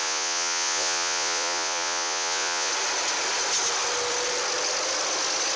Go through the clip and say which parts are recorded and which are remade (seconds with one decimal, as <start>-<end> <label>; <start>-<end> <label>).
0.0-2.7 remade; 2.7-5.6 recorded